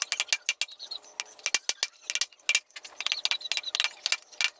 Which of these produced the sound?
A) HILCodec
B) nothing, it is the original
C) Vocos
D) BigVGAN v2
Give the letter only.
B